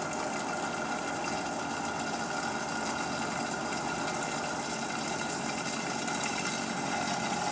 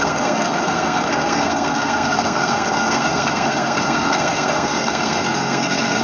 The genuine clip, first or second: first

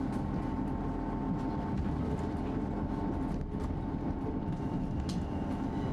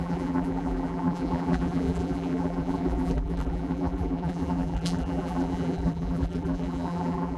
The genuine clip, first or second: first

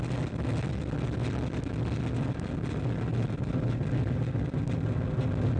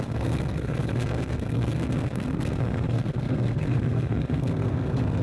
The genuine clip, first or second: first